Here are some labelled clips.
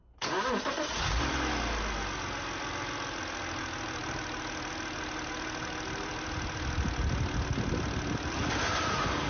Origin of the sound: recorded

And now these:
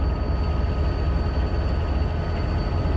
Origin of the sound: recorded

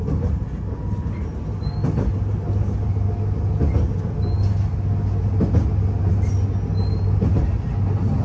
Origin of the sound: recorded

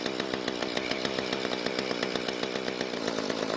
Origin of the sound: remade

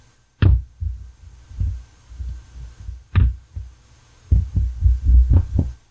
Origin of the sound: recorded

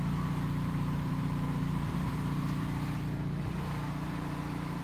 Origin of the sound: remade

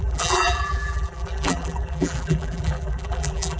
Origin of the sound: remade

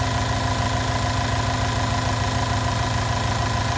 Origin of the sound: recorded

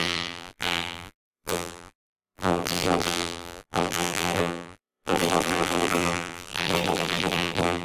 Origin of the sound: remade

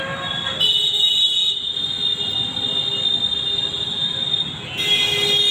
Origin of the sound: recorded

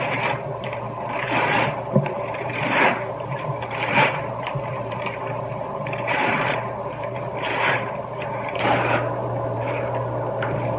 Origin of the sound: remade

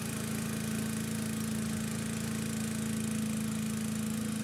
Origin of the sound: recorded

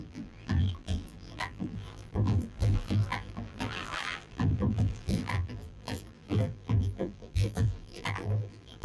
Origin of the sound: remade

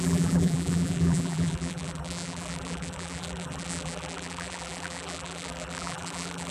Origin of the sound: remade